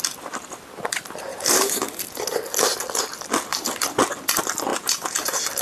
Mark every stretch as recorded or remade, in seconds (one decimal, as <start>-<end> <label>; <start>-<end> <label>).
0.0-1.3 recorded; 1.3-2.0 remade; 2.0-3.5 recorded; 3.5-4.0 remade; 4.0-4.7 recorded; 4.7-5.6 remade